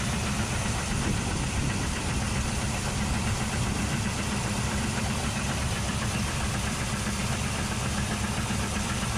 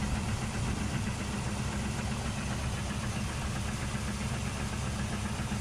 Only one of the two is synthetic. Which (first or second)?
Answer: first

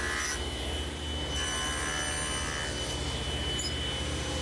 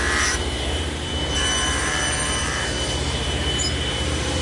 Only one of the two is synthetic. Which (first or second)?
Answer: second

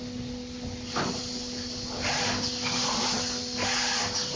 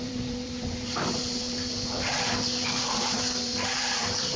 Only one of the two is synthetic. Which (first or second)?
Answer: second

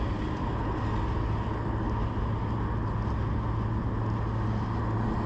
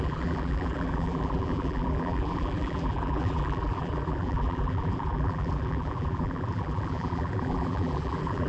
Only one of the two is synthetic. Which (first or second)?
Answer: second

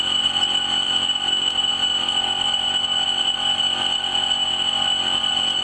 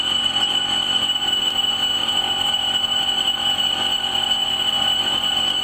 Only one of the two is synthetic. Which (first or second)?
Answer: second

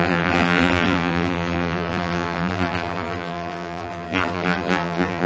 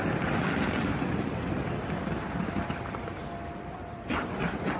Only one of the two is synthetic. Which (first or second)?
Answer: first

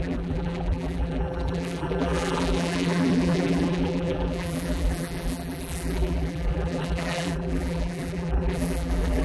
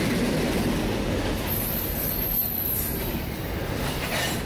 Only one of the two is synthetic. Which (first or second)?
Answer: first